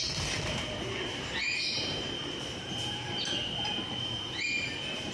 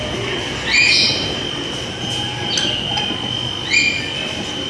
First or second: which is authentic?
second